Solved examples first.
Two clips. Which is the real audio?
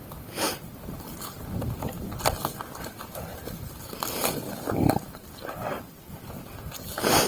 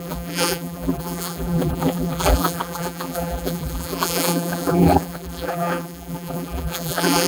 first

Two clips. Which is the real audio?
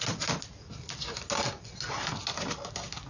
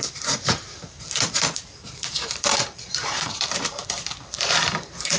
first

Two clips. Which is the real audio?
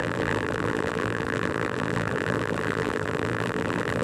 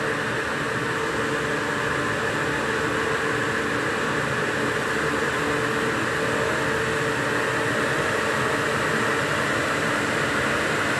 second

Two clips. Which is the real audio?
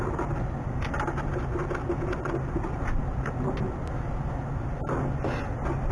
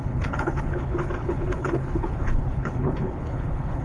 first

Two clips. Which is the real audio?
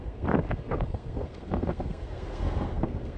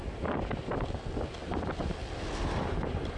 second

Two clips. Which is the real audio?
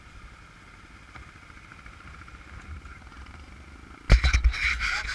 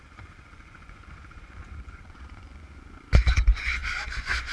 first